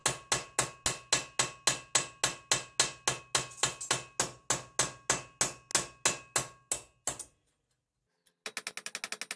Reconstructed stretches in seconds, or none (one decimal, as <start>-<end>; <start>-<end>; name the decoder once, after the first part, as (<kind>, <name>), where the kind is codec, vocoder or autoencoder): none